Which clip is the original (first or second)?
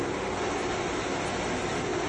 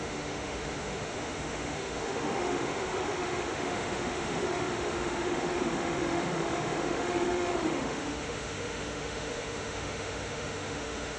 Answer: first